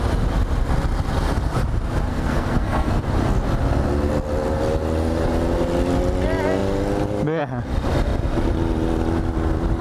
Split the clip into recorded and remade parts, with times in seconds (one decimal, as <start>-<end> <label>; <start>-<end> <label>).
0.0-2.1 recorded; 2.1-3.0 remade; 3.0-9.8 recorded